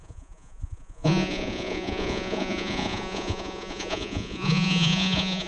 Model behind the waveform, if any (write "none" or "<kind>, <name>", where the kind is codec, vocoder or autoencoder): vocoder, Vocos